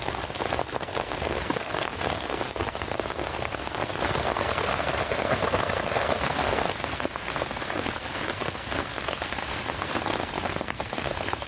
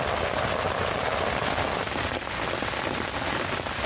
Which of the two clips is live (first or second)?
second